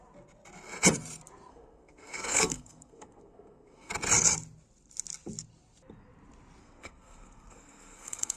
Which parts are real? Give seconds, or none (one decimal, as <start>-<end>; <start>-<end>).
0.0-1.5; 3.9-6.6